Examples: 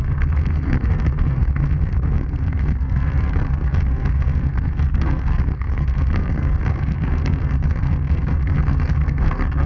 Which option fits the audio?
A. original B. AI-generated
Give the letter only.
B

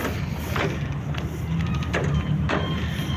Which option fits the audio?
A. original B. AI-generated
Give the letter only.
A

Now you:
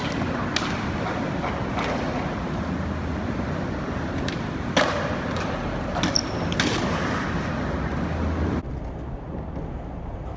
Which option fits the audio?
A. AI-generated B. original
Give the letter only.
B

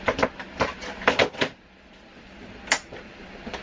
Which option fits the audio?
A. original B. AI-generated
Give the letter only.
A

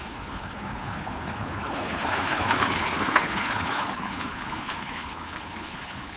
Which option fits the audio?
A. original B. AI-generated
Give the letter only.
B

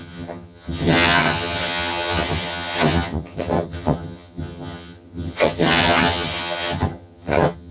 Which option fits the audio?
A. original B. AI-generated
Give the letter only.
B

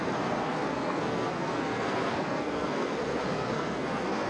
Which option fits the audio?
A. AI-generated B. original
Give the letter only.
A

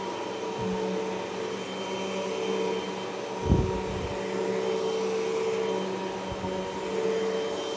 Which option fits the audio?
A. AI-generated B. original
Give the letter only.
B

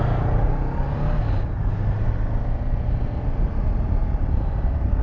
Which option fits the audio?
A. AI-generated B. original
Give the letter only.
B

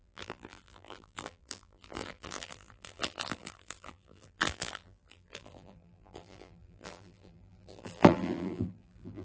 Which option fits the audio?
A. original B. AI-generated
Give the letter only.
B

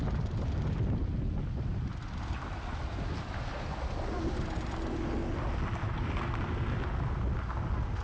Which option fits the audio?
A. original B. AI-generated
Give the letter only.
A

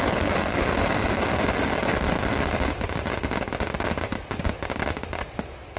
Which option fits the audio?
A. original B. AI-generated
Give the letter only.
A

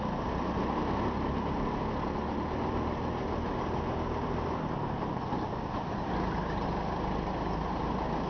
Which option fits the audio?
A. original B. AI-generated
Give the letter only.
A